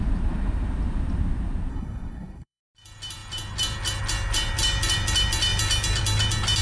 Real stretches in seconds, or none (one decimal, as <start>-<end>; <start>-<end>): 0.0-1.7; 2.6-6.6